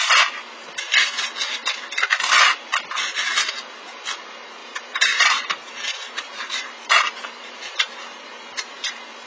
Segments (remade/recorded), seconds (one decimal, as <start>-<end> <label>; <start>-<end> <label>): 0.0-4.6 recorded; 4.6-8.9 remade; 8.9-9.3 recorded